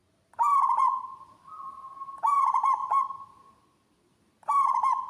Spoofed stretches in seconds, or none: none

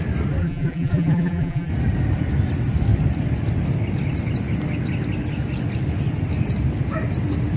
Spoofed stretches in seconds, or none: 0.4-1.7 (vocoder, BigVGAN v2)

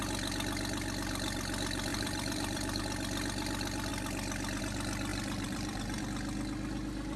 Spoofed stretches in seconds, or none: 1.9-2.8 (vocoder, BigVGAN v2); 5.1-6.0

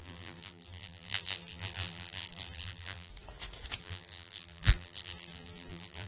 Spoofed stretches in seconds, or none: 0.0-3.1 (vocoder, BigVGAN v2); 3.8-6.1

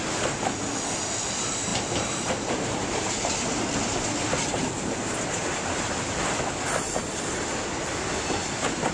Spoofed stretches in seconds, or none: 1.7-3.1 (vocoder, BigVGAN v2)

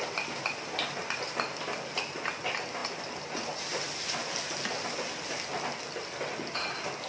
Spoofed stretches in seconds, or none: none

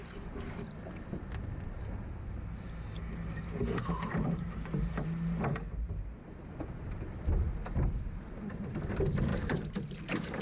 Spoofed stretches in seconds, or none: 4.1-10.4 (vocoder, BigVGAN v2)

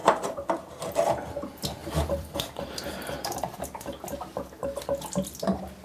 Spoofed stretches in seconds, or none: 0.0-0.7 (vocoder, BigVGAN v2); 1.8-4.0